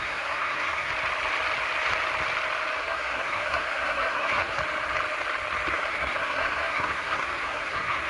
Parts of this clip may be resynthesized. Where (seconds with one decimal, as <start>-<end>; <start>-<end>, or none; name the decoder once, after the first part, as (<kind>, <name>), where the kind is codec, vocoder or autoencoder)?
0.0-0.9 (codec, SNAC); 2.8-4.6; 5.7-8.1